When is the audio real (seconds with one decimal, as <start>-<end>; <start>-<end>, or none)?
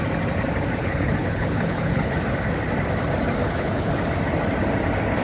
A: 0.0-0.8; 2.2-3.4; 3.9-5.2